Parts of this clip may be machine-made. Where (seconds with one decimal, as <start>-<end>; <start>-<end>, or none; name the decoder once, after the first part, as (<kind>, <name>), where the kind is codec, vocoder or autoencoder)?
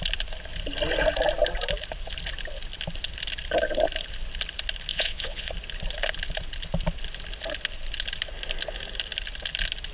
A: 4.9-5.5 (vocoder, Vocos)